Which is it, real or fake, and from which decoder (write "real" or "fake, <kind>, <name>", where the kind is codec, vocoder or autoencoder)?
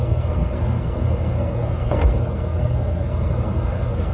fake, codec, SNAC